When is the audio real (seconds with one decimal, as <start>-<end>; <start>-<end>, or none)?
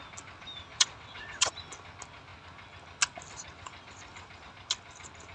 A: 0.0-0.7; 1.5-5.3